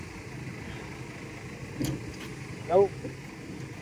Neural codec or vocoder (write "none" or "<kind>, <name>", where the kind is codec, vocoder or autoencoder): none